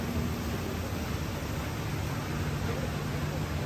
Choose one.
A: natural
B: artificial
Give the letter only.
A